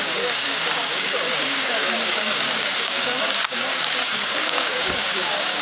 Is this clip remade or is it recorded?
remade